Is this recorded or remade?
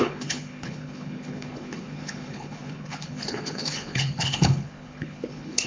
remade